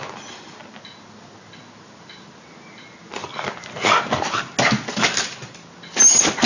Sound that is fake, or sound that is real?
real